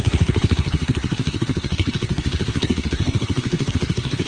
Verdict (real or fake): fake